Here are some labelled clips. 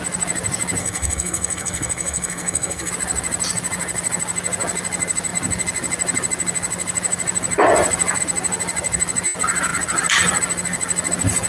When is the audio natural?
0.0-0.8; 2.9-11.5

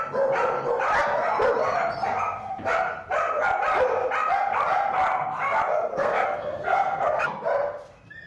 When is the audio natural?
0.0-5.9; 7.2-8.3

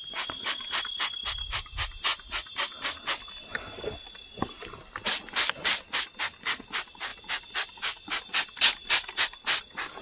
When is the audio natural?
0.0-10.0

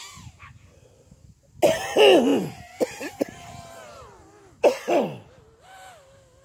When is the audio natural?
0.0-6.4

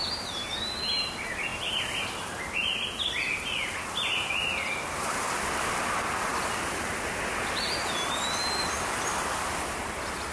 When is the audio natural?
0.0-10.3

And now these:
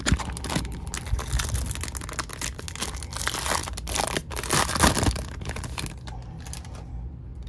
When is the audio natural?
0.0-3.6; 5.5-7.5